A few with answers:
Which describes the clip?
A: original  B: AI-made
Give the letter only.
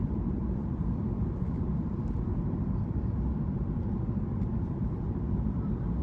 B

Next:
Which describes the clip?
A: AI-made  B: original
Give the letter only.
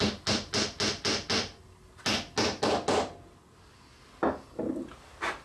B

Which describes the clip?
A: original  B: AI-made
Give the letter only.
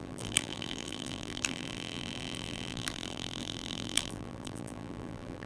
B